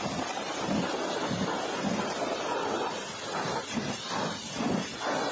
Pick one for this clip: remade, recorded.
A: recorded